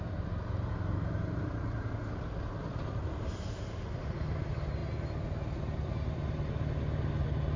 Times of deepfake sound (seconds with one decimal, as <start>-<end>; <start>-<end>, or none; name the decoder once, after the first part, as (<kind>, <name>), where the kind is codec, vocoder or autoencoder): none